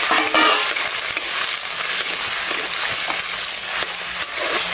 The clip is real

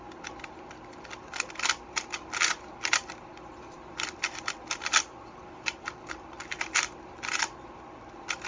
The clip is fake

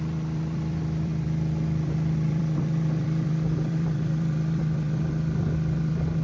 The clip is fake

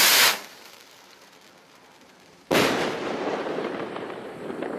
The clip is fake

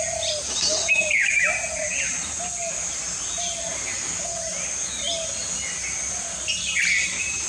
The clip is real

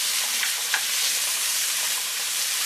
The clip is fake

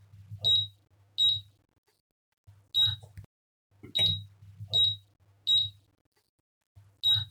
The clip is real